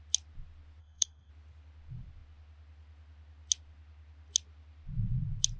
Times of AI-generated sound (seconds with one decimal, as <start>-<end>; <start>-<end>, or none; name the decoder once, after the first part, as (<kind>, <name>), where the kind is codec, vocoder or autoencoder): 0.8-1.3 (codec, SNAC)